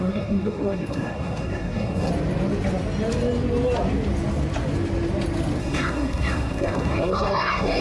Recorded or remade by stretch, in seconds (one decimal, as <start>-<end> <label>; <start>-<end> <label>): 0.0-2.1 remade; 2.1-5.6 recorded; 5.6-7.8 remade